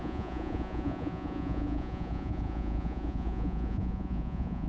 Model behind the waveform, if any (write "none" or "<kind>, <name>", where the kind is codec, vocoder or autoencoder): vocoder, Vocos